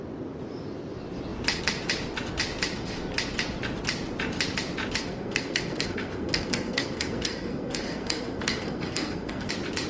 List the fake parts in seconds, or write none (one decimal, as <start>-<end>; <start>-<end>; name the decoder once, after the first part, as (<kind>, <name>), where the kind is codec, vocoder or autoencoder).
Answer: 5.0-9.5 (codec, SNAC)